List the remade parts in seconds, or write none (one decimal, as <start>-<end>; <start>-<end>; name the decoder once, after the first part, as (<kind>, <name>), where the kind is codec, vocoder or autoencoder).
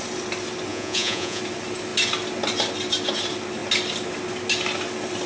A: 0.7-1.4 (vocoder, Vocos)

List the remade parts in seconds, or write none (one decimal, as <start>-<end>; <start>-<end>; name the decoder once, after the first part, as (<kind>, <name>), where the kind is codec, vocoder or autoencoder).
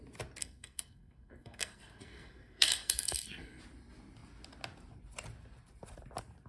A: 0.4-3.6 (codec, SNAC)